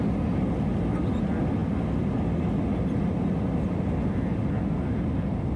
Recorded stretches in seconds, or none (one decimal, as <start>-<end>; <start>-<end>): 0.0-5.6